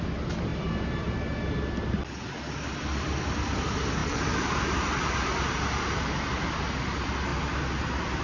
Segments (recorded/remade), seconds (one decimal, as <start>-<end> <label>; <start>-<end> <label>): 0.0-0.5 recorded; 0.5-1.1 remade; 1.1-4.0 recorded; 4.0-6.1 remade; 6.1-8.2 recorded

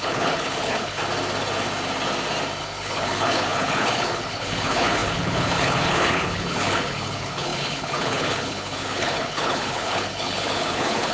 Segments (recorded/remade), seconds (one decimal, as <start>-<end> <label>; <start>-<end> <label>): 0.0-1.0 remade; 1.0-2.6 recorded; 2.6-11.1 remade